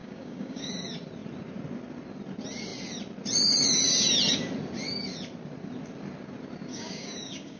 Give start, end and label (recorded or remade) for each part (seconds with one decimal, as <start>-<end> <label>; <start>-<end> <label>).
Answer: 0.0-0.7 remade; 0.7-6.7 recorded; 6.7-7.6 remade